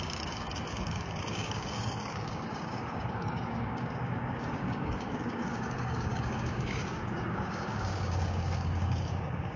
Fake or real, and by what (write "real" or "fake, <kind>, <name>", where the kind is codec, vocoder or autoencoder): fake, codec, DAC